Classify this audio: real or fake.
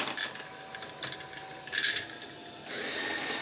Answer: real